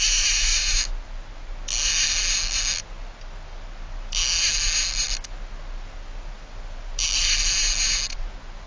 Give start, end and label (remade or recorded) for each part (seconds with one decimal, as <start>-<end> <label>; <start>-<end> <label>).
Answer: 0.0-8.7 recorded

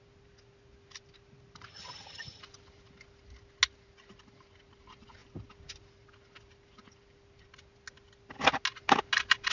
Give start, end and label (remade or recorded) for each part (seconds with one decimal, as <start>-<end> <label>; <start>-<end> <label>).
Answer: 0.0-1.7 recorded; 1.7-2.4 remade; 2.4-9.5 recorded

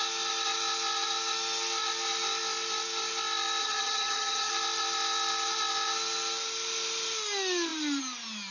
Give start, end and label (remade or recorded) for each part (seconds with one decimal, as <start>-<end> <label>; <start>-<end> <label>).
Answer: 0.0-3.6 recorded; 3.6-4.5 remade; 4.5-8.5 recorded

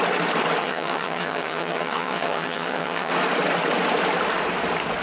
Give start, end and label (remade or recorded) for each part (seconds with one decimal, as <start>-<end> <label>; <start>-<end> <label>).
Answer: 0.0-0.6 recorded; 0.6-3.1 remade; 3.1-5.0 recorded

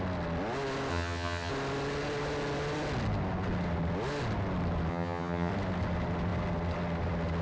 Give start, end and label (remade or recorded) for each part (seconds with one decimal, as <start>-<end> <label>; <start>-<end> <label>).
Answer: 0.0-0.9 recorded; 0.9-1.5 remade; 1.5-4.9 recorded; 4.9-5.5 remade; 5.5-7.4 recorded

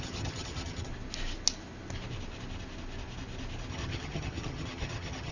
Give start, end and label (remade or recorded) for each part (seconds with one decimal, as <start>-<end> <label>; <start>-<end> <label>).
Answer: 0.0-0.9 remade; 0.9-3.7 recorded; 3.7-5.3 remade

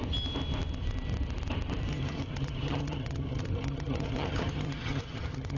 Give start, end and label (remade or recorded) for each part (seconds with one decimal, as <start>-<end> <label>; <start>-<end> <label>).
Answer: 0.0-1.9 recorded; 1.9-5.6 remade